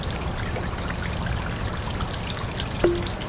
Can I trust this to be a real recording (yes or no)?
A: yes